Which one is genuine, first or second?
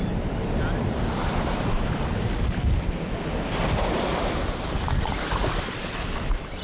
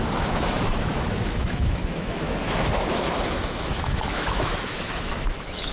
first